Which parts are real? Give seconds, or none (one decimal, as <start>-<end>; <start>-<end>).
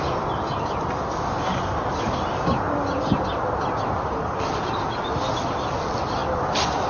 0.0-6.9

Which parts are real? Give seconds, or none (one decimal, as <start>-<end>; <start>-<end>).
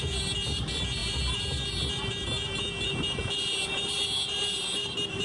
0.0-5.2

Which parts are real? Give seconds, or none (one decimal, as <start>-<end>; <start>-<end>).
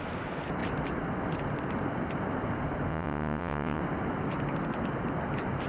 0.0-2.9; 3.8-5.7